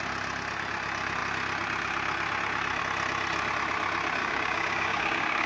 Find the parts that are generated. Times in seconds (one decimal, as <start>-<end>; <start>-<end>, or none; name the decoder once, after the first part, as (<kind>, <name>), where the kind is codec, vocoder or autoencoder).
4.2-5.5 (codec, DAC)